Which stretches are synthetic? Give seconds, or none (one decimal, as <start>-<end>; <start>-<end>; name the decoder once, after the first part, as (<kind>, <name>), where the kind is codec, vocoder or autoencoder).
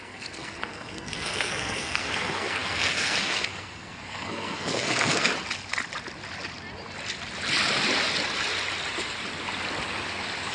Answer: 0.0-5.3 (codec, SNAC)